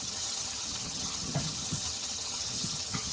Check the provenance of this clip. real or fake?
fake